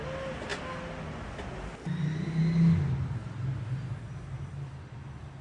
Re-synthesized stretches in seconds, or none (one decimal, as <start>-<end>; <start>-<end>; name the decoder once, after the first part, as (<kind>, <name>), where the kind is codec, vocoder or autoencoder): none